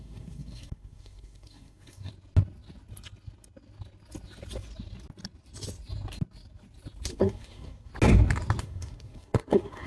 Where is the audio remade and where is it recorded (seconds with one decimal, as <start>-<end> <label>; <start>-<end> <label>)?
0.0-2.1 remade; 2.1-7.1 recorded; 7.1-7.9 remade; 7.9-8.6 recorded; 8.6-9.9 remade